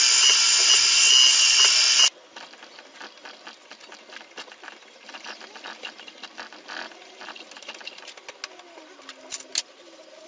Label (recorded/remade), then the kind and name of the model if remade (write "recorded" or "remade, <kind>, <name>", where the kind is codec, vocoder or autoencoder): recorded